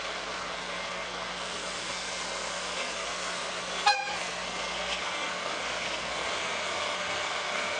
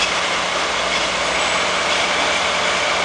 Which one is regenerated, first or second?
first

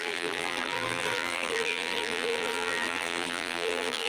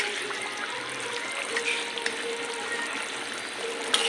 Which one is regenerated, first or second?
first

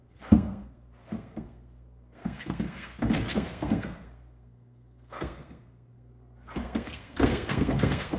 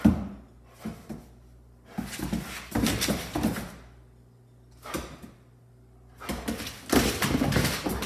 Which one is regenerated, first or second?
first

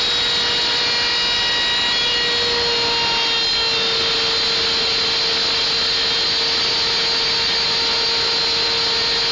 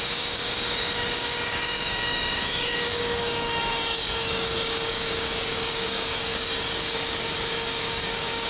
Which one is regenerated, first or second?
second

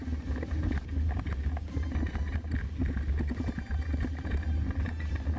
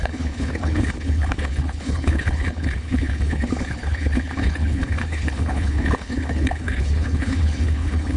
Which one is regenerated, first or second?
second